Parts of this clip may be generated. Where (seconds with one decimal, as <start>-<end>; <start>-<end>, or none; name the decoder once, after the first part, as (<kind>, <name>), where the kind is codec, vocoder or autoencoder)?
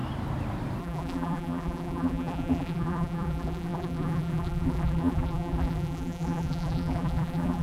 0.8-7.6 (vocoder, BigVGAN v2)